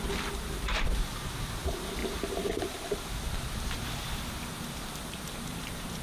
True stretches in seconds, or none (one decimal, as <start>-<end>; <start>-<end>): 0.0-6.0